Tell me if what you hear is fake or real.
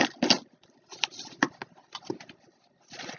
real